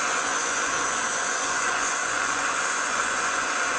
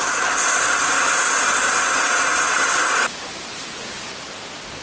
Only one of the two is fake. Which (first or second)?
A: first